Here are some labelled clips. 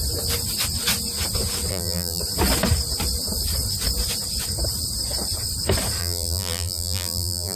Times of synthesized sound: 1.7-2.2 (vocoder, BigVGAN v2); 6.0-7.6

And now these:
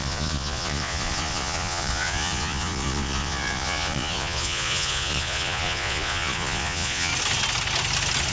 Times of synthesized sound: 0.0-7.1 (vocoder, Vocos)

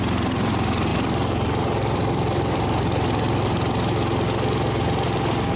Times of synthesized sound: 0.9-3.5 (vocoder, BigVGAN v2)

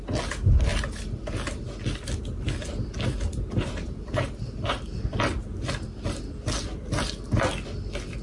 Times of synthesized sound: none

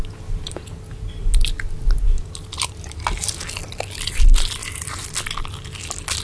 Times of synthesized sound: none

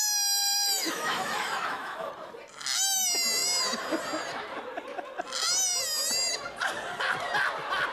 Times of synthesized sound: 0.4-2.1 (autoencoder, DAC-VAE)